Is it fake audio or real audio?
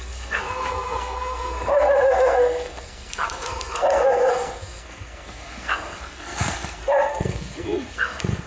fake